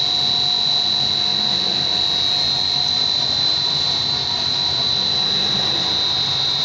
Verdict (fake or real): real